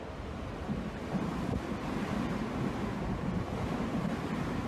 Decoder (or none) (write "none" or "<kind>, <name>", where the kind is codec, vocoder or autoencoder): none